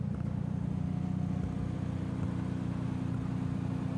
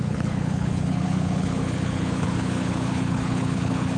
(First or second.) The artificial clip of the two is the second